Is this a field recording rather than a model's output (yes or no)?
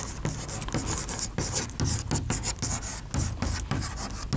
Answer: yes